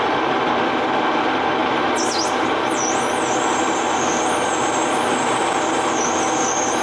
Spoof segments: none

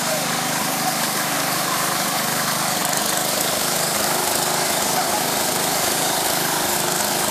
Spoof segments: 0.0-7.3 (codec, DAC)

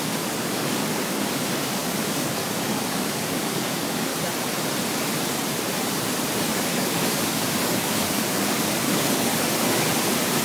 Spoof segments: 0.0-4.1 (codec, DAC); 6.5-9.3

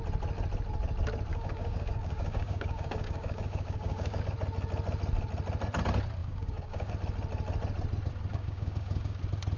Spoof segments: 1.3-4.2 (codec, DAC); 6.2-6.9; 8.3-9.2